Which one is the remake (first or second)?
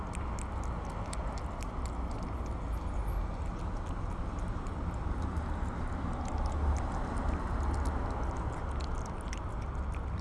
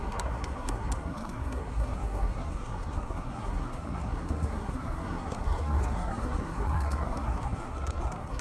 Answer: second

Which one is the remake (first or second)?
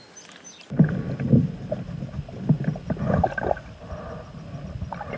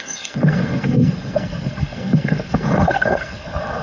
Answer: second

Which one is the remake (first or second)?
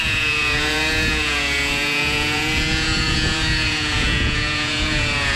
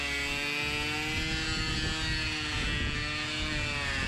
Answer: first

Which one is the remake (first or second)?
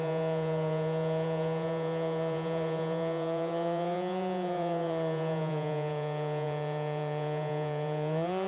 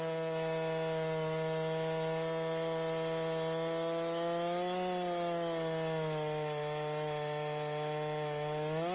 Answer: first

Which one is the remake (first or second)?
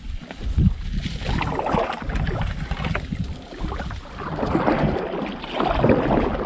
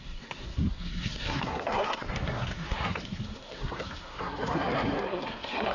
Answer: second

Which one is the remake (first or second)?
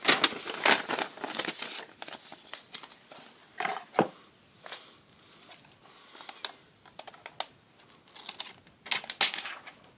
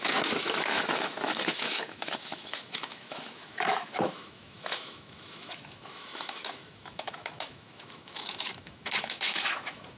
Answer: second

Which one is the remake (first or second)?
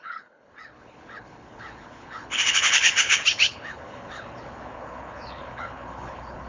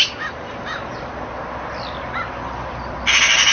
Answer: first